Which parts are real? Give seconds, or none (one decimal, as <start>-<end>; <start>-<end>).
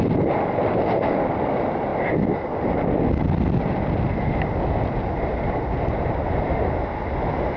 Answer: 0.0-7.6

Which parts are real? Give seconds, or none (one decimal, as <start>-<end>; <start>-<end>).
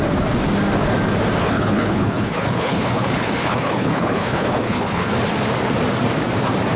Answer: 0.0-1.4; 5.1-6.8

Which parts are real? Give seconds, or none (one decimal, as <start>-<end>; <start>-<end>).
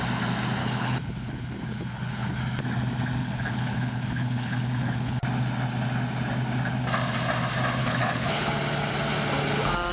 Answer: 0.0-0.6; 2.4-3.2; 5.2-7.8; 8.5-9.9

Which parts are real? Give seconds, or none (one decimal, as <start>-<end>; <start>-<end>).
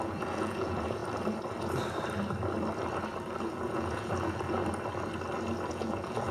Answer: 1.0-3.4; 4.6-5.7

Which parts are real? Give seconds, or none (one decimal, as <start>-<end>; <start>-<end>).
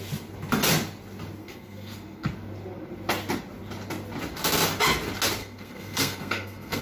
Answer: 0.0-1.4; 2.3-5.4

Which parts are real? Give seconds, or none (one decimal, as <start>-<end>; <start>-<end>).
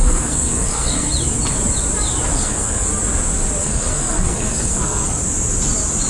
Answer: 1.1-2.3; 2.9-3.6; 5.2-6.1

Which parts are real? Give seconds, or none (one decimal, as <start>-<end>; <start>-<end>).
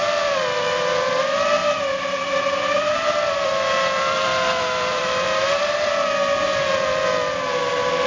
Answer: 0.0-1.6; 5.9-8.1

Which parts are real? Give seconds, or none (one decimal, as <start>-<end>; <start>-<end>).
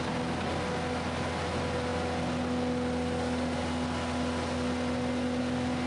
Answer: 0.0-5.9